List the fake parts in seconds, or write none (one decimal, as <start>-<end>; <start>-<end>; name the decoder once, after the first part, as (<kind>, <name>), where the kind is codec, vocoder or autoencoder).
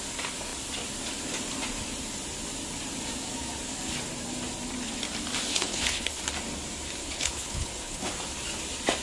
5.5-6.2 (codec, HILCodec); 7.0-8.1